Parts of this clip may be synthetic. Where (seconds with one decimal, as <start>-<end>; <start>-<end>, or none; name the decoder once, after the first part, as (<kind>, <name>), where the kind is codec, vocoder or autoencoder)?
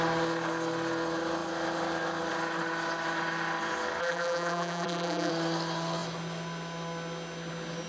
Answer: 4.0-5.3 (vocoder, BigVGAN v2)